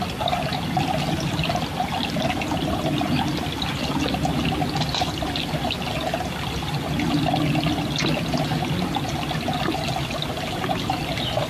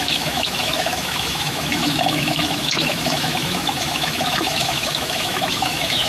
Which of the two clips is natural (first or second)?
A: first